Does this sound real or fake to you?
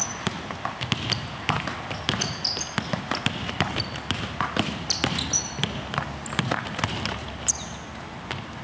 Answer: real